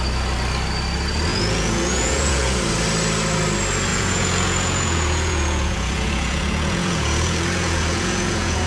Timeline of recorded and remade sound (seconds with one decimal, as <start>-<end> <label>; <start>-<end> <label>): 0.0-1.3 recorded; 1.3-2.6 remade; 2.6-3.9 recorded; 3.9-8.7 remade